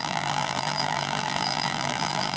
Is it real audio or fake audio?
fake